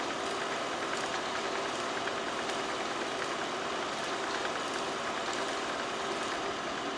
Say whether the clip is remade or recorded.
recorded